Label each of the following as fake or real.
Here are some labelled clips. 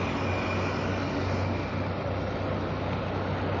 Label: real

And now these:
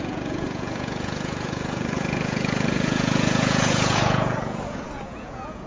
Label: fake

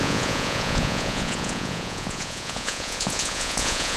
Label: fake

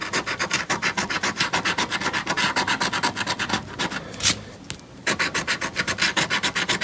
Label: real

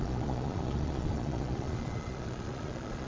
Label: fake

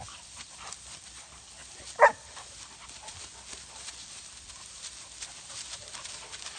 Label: real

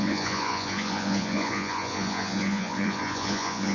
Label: fake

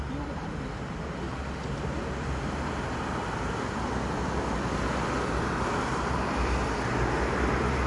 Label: real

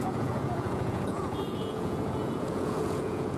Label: fake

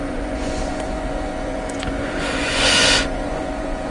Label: fake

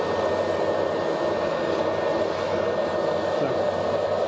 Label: real